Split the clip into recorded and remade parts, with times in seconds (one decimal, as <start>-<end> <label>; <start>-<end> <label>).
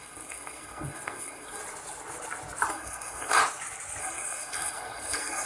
0.0-1.6 remade; 1.6-2.7 recorded; 2.7-3.4 remade; 3.4-4.0 recorded; 4.0-5.5 remade